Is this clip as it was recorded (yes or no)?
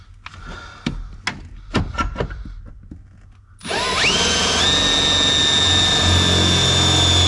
yes